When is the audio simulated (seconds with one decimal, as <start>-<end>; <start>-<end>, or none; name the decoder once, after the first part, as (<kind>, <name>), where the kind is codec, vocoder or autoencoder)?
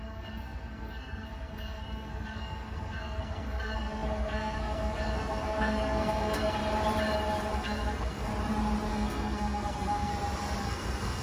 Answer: 0.0-6.6 (codec, SNAC); 7.5-8.3; 8.9-10.1; 10.6-11.2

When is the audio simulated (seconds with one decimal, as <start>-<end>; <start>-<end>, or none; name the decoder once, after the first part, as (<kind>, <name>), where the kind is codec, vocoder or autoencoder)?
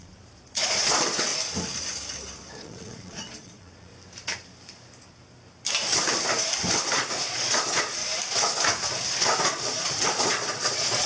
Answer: 0.0-1.3 (vocoder, Vocos); 2.5-3.9; 6.8-8.0; 9.4-11.1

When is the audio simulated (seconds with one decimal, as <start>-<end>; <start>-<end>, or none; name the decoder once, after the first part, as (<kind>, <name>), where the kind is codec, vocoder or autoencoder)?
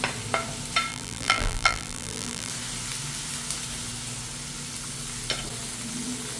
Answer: 0.9-2.5 (vocoder, BigVGAN v2)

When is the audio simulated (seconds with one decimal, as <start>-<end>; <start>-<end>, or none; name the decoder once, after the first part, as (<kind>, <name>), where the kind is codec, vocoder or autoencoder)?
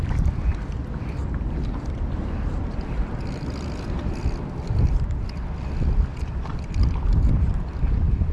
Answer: 0.8-4.2 (vocoder, BigVGAN v2); 6.1-7.5